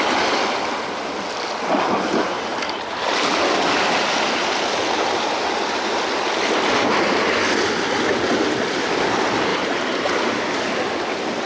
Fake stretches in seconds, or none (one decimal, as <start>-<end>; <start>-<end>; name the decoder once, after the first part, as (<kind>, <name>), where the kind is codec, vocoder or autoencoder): 9.5-10.4 (vocoder, BigVGAN v2)

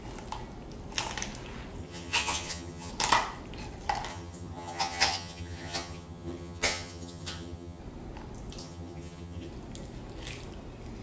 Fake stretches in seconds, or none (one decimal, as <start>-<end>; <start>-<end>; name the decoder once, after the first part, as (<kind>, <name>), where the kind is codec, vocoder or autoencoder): 1.8-2.9 (vocoder, HiFi-GAN); 4.1-7.8; 8.6-9.5

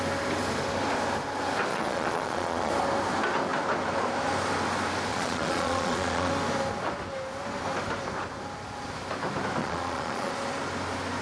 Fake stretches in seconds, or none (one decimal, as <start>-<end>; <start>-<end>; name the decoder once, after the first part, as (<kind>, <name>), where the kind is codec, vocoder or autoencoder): 1.7-2.7 (vocoder, Vocos); 5.1-6.3; 9.6-10.3

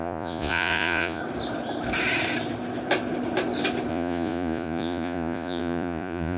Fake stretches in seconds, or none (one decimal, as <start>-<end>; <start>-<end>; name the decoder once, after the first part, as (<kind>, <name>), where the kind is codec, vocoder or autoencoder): 0.0-1.2 (vocoder, Vocos); 3.9-6.4

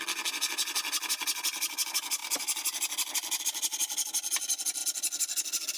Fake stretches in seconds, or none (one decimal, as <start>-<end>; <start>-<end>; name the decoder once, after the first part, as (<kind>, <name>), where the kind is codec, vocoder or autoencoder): none

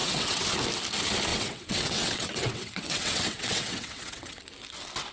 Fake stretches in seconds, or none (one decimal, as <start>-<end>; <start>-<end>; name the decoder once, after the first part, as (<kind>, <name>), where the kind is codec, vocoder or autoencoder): 0.0-0.5 (vocoder, WaveNeXt); 1.3-4.4